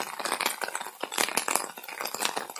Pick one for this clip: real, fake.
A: real